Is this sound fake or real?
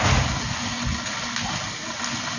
real